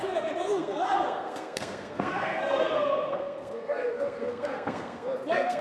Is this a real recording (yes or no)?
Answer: no